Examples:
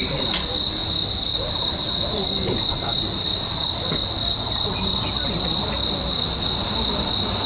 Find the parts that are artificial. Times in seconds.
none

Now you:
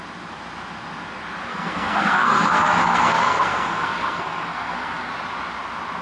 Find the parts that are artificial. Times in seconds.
1.5-5.1 (codec, SNAC)

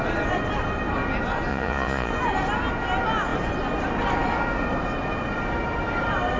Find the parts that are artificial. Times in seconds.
1.5-2.1 (vocoder, Vocos)